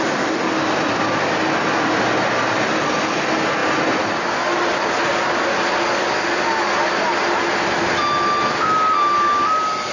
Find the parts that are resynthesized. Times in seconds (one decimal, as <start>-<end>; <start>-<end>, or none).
none